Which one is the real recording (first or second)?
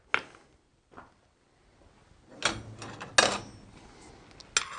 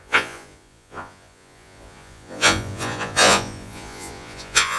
first